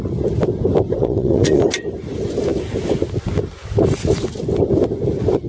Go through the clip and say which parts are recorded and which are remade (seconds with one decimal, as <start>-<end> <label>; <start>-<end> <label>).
0.0-1.0 recorded; 1.0-1.6 remade; 1.6-5.5 recorded